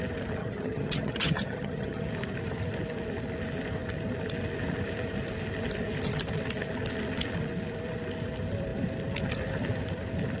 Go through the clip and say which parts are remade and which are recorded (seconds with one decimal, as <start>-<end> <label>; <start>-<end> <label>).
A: 0.0-0.4 recorded; 0.4-2.1 remade; 2.1-10.4 recorded